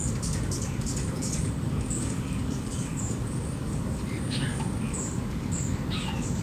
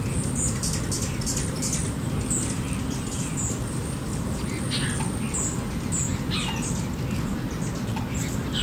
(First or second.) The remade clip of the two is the first